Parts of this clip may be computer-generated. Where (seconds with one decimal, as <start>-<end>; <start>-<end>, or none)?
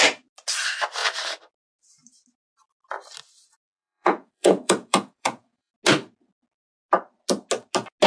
3.6-5.7